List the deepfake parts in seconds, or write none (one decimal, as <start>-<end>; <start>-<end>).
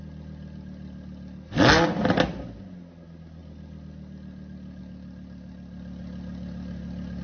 none